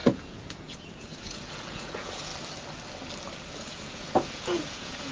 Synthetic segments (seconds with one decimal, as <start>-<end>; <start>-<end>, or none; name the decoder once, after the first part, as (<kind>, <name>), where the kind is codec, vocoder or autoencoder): 0.0-2.3 (vocoder, Vocos); 3.5-5.1